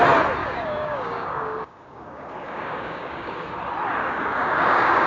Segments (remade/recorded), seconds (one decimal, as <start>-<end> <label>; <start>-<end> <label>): 0.0-0.4 recorded; 0.4-3.5 remade; 3.5-4.0 recorded; 4.0-5.1 remade